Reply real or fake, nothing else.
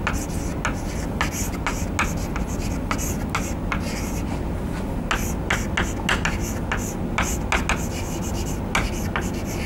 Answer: real